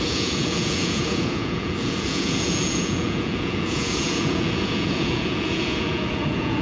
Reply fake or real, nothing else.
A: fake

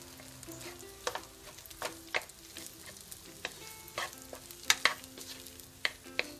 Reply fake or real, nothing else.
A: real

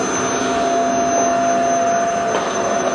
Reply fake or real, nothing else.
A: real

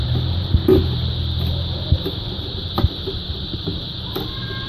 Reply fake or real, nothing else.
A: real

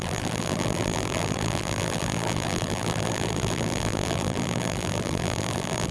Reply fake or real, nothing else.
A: fake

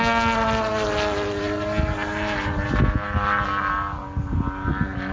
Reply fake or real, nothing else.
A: real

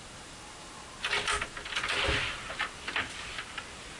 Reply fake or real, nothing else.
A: real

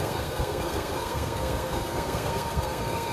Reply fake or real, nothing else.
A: fake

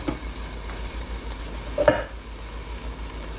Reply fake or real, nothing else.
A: real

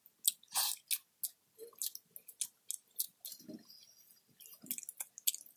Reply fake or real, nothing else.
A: real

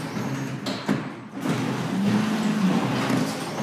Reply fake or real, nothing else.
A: real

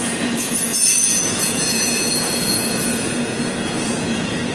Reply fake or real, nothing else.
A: fake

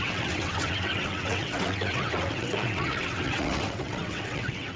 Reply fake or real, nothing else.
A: fake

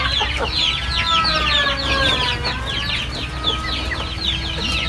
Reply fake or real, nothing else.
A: real